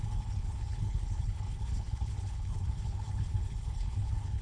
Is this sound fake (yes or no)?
yes